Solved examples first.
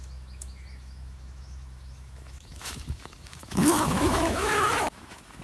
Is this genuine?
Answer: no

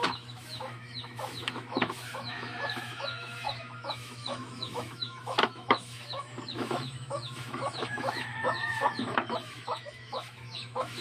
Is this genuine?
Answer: no